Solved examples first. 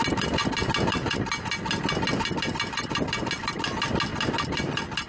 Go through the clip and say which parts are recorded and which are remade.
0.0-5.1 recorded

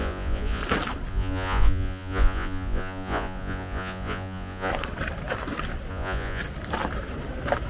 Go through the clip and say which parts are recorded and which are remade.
0.0-0.6 remade; 0.6-1.1 recorded; 1.1-4.7 remade; 4.7-5.9 recorded; 5.9-6.4 remade; 6.4-7.7 recorded

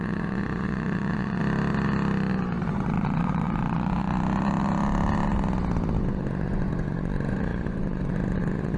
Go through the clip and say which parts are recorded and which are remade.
0.0-1.4 remade; 1.4-2.6 recorded; 2.6-4.1 remade; 4.1-6.0 recorded; 6.0-8.8 remade

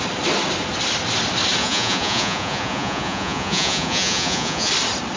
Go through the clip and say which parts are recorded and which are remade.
0.0-1.6 recorded; 1.6-4.7 remade; 4.7-5.2 recorded